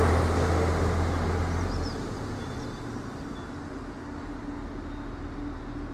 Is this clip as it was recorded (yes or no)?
yes